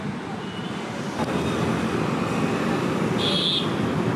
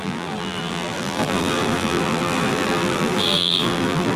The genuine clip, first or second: first